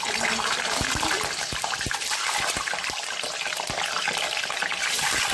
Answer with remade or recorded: recorded